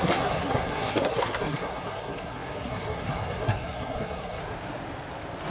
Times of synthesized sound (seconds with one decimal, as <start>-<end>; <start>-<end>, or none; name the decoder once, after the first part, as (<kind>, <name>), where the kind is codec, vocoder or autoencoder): 0.0-4.4 (codec, SNAC)